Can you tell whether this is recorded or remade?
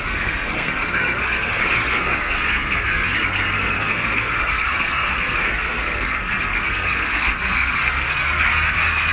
remade